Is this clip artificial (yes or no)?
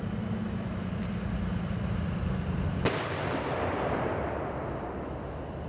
no